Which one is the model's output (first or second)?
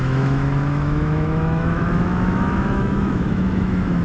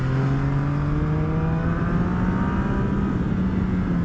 first